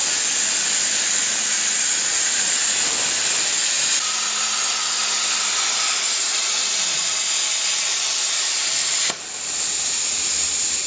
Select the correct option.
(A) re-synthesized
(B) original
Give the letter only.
B